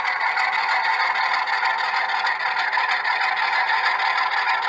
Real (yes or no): yes